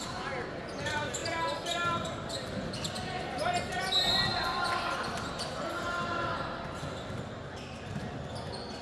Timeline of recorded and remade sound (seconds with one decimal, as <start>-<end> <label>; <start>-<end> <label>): 0.0-8.8 recorded